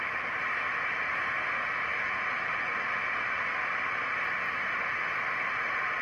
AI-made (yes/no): no